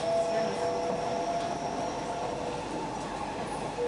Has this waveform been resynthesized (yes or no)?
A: no